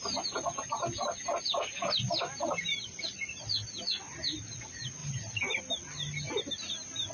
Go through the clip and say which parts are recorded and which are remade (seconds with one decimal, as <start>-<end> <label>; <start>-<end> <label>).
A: 0.0-5.0 recorded; 5.0-5.6 remade; 5.6-7.1 recorded